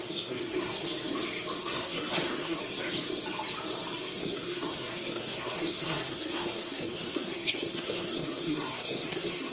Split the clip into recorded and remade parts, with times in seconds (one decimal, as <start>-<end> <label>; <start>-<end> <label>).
0.0-0.9 remade; 0.9-1.6 recorded; 1.6-2.6 remade; 2.6-4.2 recorded; 4.2-9.5 remade